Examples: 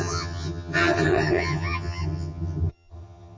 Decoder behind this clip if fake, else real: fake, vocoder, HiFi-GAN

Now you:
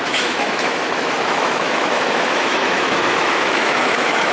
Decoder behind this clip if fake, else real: fake, autoencoder, DAC-VAE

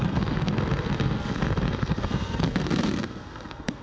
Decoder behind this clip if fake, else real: fake, codec, SNAC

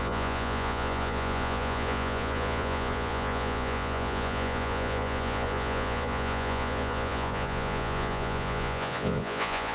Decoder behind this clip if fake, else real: fake, vocoder, Vocos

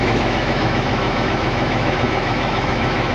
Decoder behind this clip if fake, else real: fake, autoencoder, DAC-VAE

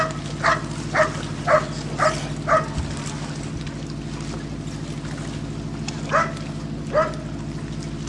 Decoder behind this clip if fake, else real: real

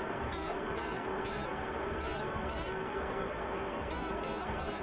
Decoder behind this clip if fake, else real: fake, codec, SNAC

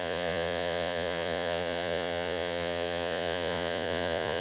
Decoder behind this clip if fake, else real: fake, vocoder, Vocos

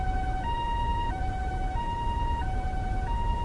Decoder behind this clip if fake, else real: fake, vocoder, Vocos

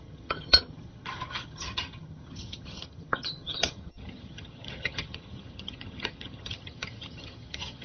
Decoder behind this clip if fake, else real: fake, vocoder, HiFi-GAN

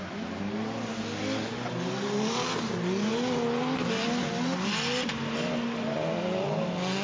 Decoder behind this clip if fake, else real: real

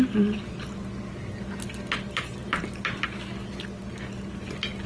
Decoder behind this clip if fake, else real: real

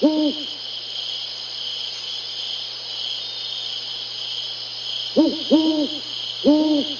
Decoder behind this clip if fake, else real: real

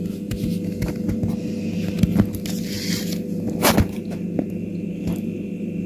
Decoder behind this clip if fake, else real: real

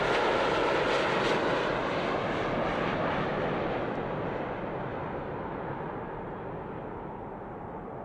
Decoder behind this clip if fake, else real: real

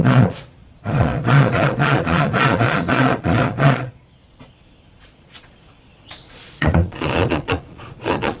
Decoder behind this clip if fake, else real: fake, vocoder, Vocos